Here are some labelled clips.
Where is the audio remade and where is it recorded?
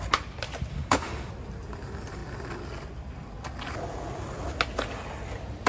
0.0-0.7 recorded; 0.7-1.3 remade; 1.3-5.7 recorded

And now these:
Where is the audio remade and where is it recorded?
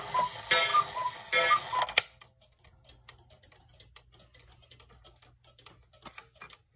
0.0-6.8 recorded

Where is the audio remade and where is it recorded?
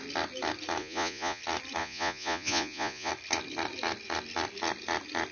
0.0-0.8 recorded; 0.8-1.4 remade; 1.4-1.8 recorded; 1.8-3.1 remade; 3.1-5.3 recorded